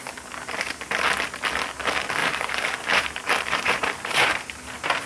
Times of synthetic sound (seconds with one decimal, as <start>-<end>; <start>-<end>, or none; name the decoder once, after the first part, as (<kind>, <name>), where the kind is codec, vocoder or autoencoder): 2.2-4.3 (vocoder, BigVGAN v2)